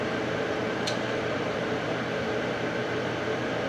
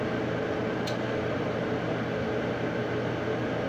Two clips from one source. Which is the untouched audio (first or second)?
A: second